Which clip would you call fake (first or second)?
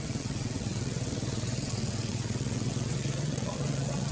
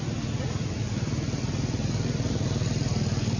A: first